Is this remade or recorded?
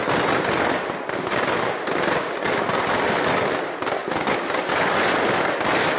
recorded